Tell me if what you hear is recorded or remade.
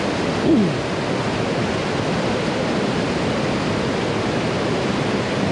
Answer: recorded